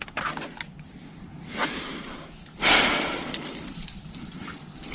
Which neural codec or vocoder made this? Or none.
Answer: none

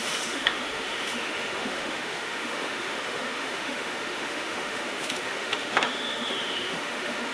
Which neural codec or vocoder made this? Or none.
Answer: autoencoder, DAC-VAE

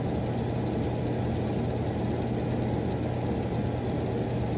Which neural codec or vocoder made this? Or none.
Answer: none